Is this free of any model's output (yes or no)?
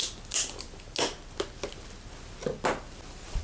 yes